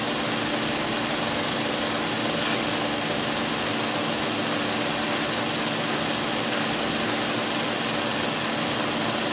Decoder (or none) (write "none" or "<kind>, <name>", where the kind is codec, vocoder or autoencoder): none